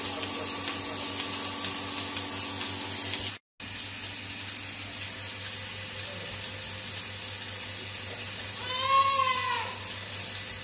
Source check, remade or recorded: recorded